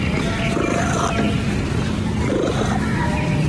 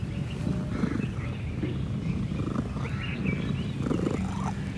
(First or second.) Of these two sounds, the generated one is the first